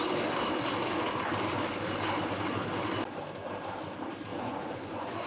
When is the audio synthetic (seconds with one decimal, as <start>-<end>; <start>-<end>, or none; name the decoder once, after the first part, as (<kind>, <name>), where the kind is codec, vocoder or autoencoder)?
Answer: 4.3-5.3 (vocoder, Vocos)